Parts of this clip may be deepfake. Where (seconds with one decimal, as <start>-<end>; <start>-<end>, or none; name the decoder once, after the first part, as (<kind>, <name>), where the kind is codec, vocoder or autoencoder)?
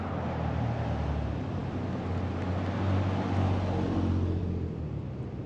none